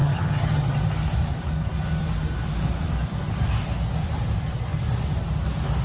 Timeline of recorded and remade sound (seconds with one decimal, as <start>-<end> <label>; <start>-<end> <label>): 0.0-0.8 remade; 0.8-5.8 recorded